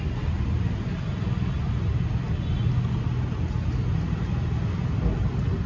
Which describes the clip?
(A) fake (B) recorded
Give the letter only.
B